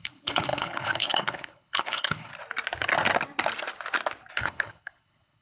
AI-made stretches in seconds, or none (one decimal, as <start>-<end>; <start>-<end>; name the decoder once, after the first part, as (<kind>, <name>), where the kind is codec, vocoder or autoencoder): 0.0-2.3 (codec, HILCodec); 4.3-5.4

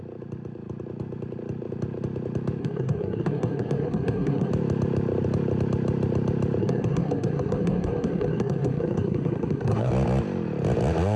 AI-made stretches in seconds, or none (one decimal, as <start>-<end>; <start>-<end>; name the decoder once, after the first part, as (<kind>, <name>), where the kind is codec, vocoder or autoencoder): 2.6-4.5 (codec, SNAC); 6.6-9.9

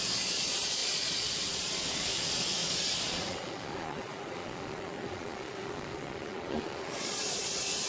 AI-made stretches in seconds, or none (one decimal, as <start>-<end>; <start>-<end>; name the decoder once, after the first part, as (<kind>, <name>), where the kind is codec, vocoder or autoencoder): 0.0-7.9 (vocoder, Vocos)

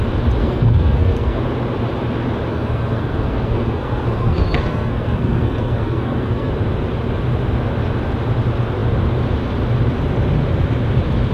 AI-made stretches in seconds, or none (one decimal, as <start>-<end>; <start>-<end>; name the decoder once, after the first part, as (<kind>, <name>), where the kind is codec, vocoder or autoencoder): 0.4-1.4 (codec, SNAC); 2.5-6.5

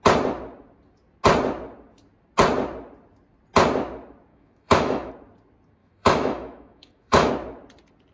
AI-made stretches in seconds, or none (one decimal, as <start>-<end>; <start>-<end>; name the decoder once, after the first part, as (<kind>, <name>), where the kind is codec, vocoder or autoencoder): 4.3-5.1 (autoencoder, DAC-VAE); 5.8-7.3

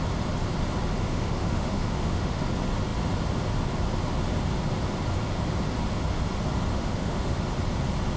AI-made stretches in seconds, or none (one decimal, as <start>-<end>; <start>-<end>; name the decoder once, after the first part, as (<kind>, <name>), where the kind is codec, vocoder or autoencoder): 1.0-2.4 (autoencoder, DAC-VAE); 6.7-7.4

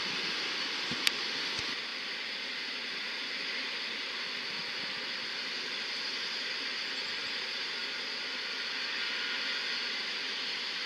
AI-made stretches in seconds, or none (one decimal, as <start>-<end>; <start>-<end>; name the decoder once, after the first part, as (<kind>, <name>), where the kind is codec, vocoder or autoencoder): 7.2-8.0 (vocoder, BigVGAN v2)

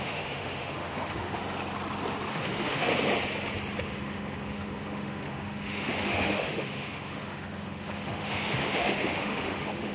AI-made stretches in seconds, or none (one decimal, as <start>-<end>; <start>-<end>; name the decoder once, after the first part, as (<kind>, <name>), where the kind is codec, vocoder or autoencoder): 0.0-1.4 (autoencoder, DAC-VAE); 2.3-2.9; 3.8-9.9